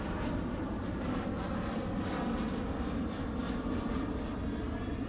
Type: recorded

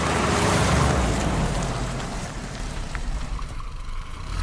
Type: remade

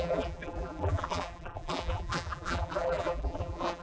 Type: remade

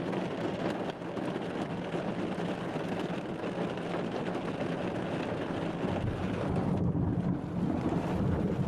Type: recorded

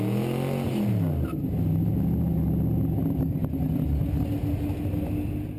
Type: recorded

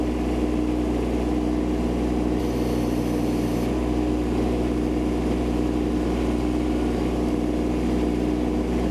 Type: recorded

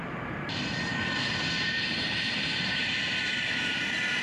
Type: remade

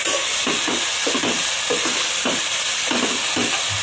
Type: remade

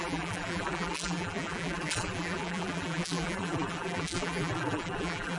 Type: remade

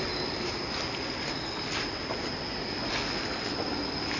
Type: recorded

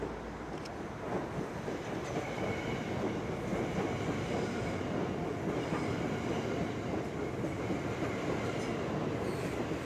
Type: recorded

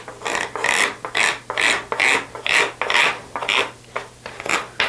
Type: recorded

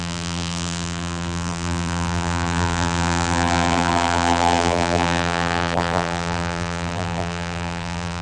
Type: remade